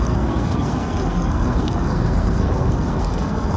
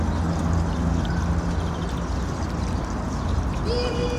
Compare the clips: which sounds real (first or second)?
second